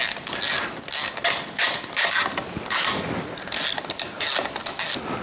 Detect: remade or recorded recorded